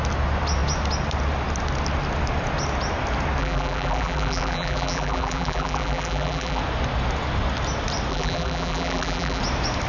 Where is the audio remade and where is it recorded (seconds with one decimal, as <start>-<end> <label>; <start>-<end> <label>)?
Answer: 0.0-3.4 recorded; 3.4-6.6 remade; 6.6-8.1 recorded; 8.1-9.4 remade; 9.4-9.9 recorded